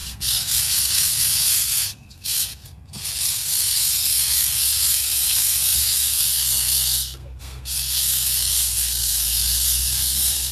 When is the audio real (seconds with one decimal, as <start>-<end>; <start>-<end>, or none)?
none